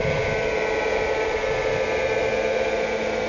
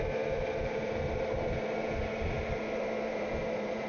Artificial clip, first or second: second